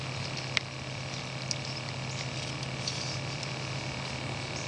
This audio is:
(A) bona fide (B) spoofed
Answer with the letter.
A